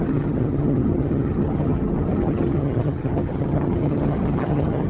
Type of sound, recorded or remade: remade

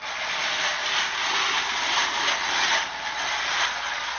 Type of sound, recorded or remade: recorded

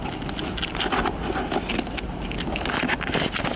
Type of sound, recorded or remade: recorded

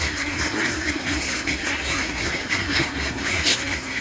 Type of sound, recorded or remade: remade